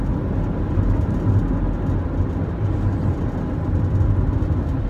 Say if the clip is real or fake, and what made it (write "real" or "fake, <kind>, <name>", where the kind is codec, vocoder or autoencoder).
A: real